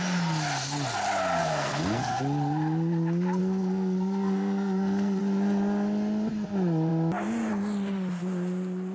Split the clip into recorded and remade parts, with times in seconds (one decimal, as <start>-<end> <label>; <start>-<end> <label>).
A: 0.0-1.4 recorded; 1.4-2.2 remade; 2.2-3.4 recorded; 3.4-5.2 remade; 5.2-8.9 recorded